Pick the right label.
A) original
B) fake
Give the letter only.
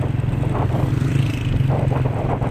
A